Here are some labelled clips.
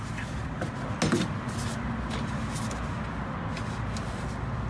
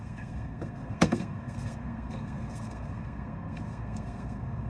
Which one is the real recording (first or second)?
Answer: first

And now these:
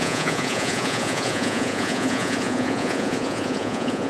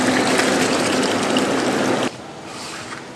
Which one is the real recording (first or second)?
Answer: second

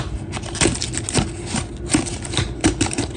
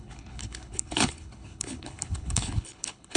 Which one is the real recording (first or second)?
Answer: first